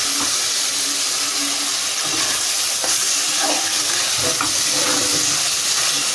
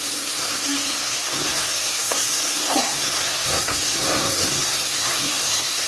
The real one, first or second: first